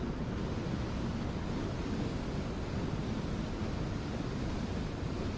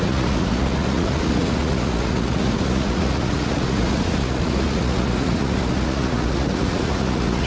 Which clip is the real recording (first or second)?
first